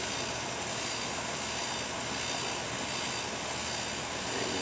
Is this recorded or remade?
recorded